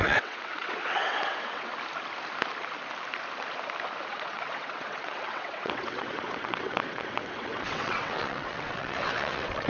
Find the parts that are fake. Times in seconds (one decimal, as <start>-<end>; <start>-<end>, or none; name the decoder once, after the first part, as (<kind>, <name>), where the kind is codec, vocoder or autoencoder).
0.0-1.7 (vocoder, WaveNeXt); 4.1-9.7